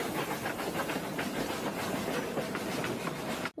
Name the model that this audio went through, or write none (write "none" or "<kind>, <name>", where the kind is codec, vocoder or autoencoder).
none